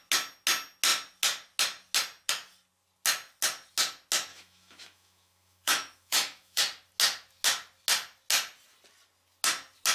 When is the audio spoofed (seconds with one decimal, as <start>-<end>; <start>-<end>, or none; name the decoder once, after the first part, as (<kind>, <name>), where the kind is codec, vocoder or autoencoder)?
4.3-6.6 (autoencoder, DAC-VAE)